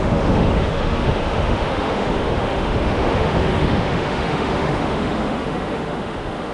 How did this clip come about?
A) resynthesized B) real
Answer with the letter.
A